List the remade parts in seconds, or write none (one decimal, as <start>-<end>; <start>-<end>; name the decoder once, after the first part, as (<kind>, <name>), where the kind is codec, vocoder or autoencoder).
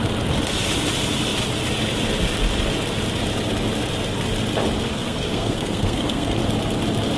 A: 4.9-6.4 (codec, SNAC)